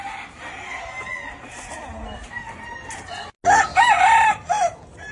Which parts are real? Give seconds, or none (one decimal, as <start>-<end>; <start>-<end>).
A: 0.0-5.1

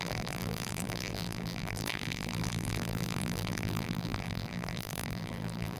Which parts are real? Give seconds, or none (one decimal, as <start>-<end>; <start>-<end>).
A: none

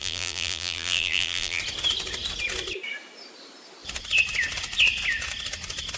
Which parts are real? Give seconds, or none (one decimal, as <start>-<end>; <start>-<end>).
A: 1.6-6.0

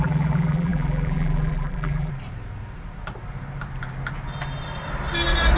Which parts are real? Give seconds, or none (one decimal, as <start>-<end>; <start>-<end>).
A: 2.1-5.6

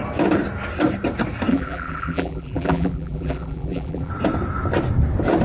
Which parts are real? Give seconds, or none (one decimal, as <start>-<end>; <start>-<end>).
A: 0.0-1.5; 4.1-5.4

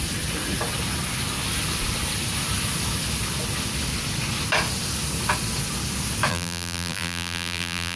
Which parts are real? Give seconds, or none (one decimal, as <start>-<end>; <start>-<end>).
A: 0.0-6.3